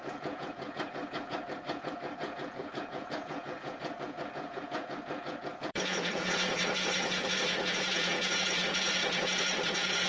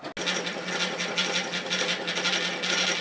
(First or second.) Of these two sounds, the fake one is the first